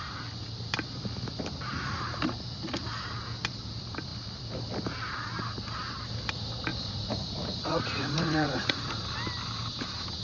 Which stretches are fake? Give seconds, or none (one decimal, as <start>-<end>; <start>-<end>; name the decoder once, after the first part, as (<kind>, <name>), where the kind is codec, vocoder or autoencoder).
6.7-9.0 (vocoder, Vocos)